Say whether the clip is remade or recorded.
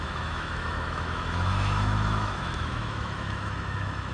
remade